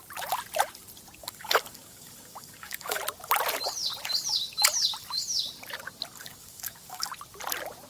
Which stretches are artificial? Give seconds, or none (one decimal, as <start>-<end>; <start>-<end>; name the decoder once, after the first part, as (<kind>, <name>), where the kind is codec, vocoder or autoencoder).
1.2-3.0 (codec, DAC); 6.2-7.1